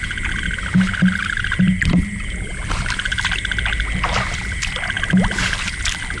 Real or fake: real